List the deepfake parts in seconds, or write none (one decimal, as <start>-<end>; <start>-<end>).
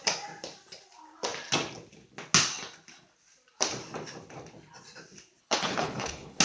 5.4-6.4